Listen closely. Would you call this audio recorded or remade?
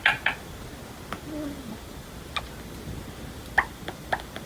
recorded